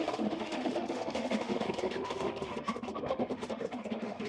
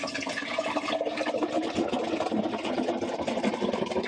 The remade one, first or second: first